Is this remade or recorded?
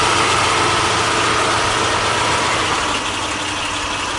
recorded